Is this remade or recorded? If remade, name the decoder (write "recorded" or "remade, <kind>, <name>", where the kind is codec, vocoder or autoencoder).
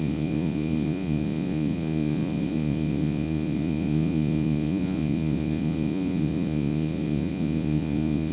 remade, vocoder, Vocos